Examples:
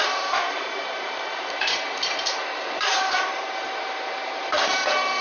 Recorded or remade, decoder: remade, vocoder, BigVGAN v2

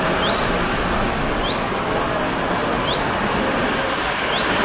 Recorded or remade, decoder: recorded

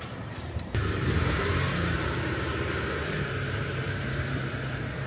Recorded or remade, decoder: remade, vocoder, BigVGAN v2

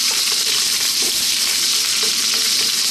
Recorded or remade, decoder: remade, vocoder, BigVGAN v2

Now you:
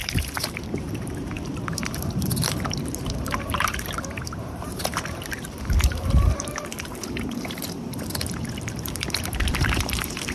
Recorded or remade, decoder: remade, vocoder, BigVGAN v2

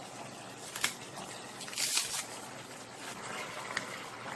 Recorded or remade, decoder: recorded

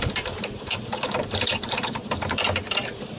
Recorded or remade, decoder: remade, vocoder, BigVGAN v2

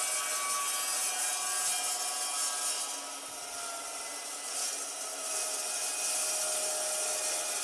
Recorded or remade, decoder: recorded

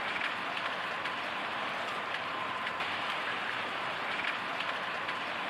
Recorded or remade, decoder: remade, vocoder, BigVGAN v2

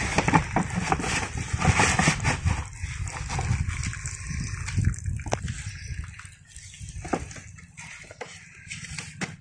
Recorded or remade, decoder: recorded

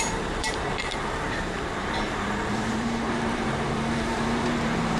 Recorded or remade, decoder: remade, vocoder, BigVGAN v2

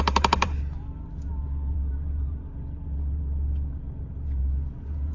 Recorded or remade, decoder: remade, vocoder, BigVGAN v2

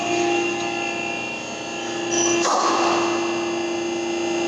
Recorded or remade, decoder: recorded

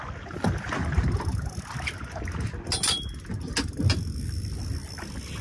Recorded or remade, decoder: recorded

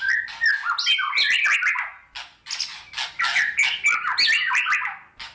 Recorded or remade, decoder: recorded